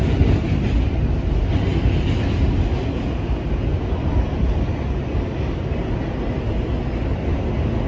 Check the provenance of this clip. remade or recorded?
recorded